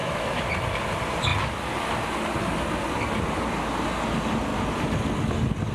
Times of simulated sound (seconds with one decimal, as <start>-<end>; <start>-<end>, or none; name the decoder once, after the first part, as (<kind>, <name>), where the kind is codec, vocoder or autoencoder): 0.0-0.5 (autoencoder, DAC-VAE)